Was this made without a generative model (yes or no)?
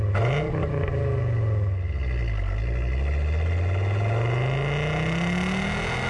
yes